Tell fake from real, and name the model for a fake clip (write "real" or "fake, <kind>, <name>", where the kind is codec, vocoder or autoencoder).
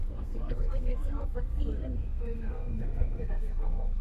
fake, codec, SNAC